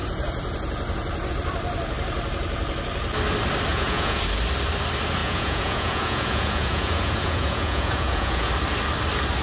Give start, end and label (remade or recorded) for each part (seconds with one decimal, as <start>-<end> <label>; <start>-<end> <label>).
0.0-3.7 recorded; 3.7-4.2 remade; 4.2-5.2 recorded; 5.2-8.5 remade; 8.5-9.4 recorded